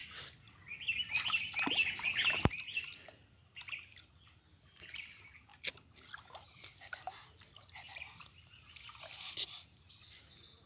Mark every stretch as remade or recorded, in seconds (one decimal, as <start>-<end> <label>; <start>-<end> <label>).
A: 0.0-10.7 recorded